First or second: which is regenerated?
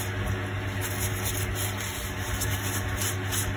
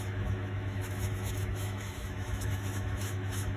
second